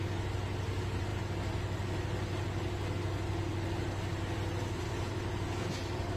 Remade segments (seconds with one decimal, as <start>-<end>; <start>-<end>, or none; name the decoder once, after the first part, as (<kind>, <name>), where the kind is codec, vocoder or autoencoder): none